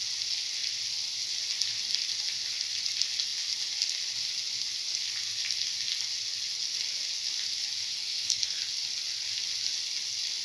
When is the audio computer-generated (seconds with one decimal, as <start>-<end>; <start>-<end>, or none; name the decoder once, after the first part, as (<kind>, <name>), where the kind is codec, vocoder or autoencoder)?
7.9-8.6 (codec, SNAC)